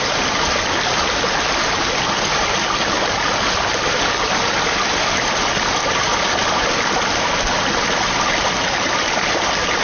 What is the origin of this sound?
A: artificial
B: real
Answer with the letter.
B